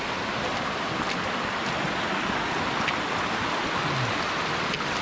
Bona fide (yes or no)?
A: yes